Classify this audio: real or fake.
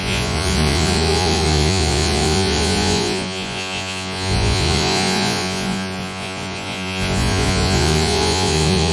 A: fake